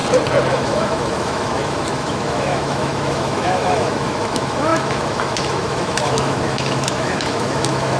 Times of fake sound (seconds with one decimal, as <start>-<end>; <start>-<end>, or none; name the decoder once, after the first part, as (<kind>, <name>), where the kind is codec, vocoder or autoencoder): 0.5-8.0 (autoencoder, DAC-VAE)